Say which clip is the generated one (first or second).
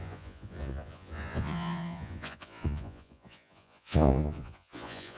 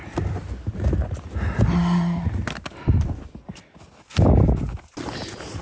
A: first